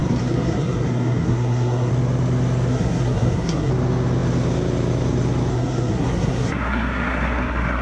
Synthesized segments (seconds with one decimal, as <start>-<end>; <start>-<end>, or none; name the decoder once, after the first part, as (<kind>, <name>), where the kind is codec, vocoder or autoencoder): 0.0-1.9 (codec, SNAC); 2.7-3.7; 5.5-7.8

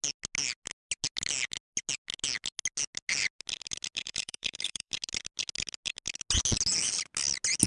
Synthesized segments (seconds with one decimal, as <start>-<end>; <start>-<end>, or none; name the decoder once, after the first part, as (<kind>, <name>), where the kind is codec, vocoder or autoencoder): 4.0-4.9 (vocoder, BigVGAN v2)

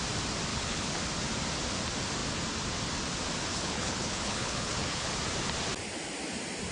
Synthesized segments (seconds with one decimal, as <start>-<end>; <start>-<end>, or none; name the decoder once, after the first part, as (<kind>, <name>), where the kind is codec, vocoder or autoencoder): 0.5-1.0 (codec, HILCodec); 3.5-5.1